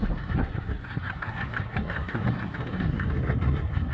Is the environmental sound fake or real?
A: fake